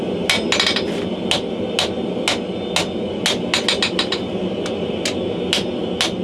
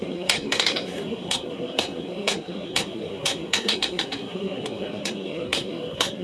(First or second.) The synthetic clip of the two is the second